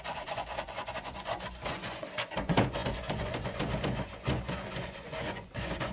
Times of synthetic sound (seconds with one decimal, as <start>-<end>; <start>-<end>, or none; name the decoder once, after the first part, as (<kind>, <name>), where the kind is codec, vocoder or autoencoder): 0.0-5.9 (vocoder, Vocos)